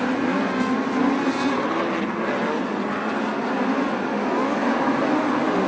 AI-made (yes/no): no